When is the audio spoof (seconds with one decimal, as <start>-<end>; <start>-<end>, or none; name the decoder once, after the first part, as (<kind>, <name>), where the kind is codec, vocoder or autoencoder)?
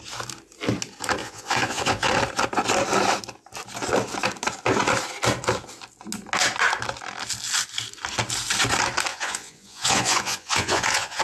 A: 1.2-2.1 (vocoder, Vocos); 9.1-11.2